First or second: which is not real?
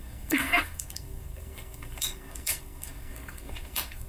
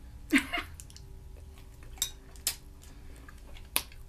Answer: first